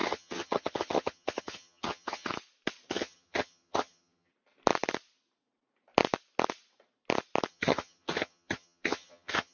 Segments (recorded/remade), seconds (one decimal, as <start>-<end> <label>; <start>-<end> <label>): 0.0-2.3 remade; 2.3-2.9 recorded; 2.9-4.3 remade; 4.3-7.5 recorded; 7.5-9.5 remade